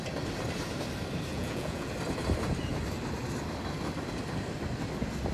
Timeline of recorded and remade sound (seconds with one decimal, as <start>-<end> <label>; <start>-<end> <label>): 0.0-1.3 recorded; 1.3-1.9 remade; 1.9-5.3 recorded